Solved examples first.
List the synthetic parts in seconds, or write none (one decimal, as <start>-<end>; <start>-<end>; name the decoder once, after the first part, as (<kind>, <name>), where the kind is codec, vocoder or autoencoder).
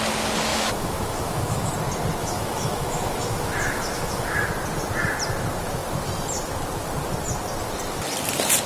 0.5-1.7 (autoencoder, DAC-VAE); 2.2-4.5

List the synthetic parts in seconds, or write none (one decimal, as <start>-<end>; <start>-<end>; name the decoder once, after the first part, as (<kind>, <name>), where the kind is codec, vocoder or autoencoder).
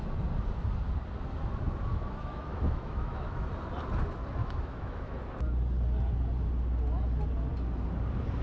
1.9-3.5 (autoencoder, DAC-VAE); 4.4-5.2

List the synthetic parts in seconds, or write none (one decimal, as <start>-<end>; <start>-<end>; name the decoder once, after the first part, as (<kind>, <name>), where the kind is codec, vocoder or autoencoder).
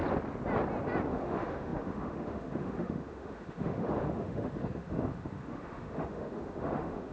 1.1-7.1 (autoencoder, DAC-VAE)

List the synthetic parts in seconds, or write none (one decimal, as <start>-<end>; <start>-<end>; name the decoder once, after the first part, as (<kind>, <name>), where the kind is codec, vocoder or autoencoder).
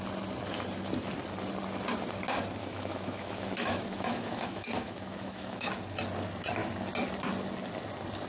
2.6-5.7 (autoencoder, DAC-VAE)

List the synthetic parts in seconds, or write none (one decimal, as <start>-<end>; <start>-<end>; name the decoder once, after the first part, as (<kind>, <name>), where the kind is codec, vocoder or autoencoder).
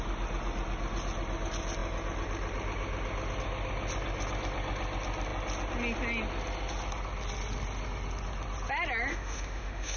9.1-10.0 (autoencoder, DAC-VAE)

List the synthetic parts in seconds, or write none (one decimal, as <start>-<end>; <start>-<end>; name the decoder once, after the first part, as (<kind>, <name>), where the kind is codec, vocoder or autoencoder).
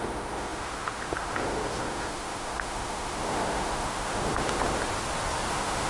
0.0-4.8 (autoencoder, DAC-VAE); 5.5-5.9